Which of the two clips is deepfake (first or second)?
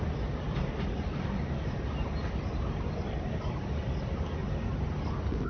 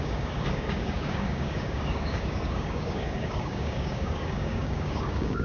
second